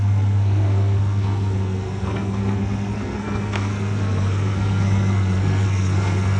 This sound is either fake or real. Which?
fake